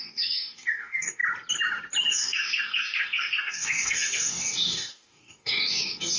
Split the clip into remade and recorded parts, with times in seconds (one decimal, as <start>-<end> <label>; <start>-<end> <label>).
0.0-1.2 remade; 1.2-2.1 recorded; 2.1-6.2 remade